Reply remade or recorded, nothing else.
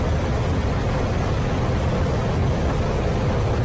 recorded